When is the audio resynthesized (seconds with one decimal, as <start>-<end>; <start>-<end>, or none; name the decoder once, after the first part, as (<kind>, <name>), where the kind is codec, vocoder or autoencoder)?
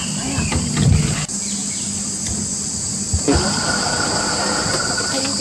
1.6-4.5 (vocoder, BigVGAN v2)